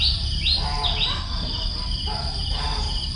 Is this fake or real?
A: real